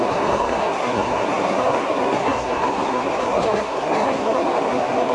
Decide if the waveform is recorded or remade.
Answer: remade